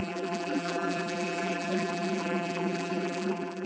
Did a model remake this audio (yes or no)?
yes